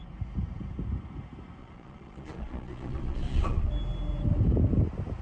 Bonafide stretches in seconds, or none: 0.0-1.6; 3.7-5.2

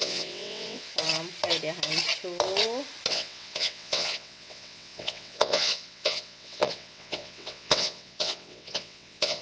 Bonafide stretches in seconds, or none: 0.9-3.1